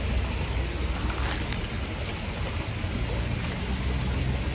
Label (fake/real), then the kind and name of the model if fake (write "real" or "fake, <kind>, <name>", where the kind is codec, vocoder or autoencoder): real